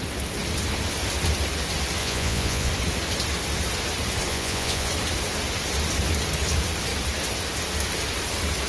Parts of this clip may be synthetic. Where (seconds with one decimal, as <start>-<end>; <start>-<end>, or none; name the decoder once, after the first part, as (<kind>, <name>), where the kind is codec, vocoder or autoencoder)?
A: 2.0-2.7 (vocoder, Vocos); 4.3-4.9